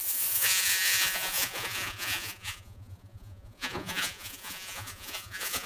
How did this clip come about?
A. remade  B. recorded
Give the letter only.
A